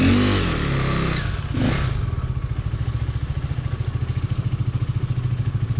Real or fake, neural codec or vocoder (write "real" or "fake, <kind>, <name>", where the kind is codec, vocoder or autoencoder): real